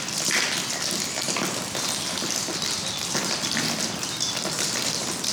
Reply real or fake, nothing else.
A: real